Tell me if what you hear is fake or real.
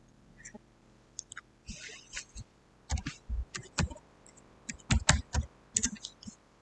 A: real